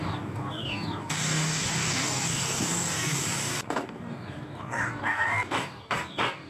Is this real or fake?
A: fake